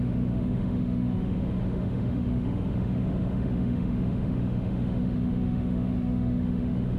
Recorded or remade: remade